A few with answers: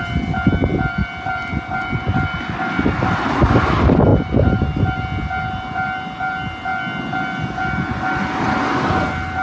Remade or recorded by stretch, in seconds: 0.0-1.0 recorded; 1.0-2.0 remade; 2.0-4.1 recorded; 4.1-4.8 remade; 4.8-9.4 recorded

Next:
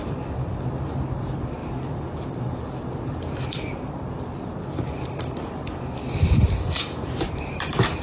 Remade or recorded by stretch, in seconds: 0.0-8.0 remade

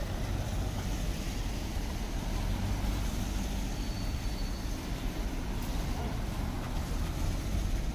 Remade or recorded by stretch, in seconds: 0.0-7.9 recorded

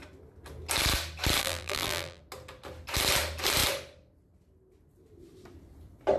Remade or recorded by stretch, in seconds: 0.0-1.4 recorded; 1.4-2.2 remade; 2.2-6.2 recorded

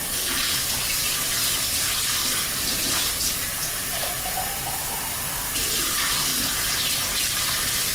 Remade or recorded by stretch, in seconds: 0.0-6.3 remade; 6.3-7.3 recorded; 7.3-7.9 remade

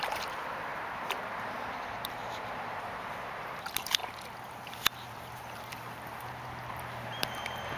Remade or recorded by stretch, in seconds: 0.0-4.0 remade; 4.0-5.1 recorded; 5.1-7.8 remade